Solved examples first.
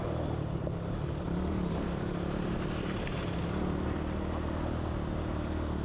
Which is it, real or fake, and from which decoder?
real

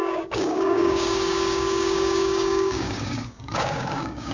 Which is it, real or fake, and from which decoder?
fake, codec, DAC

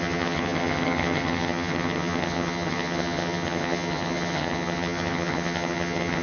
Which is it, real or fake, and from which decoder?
fake, vocoder, HiFi-GAN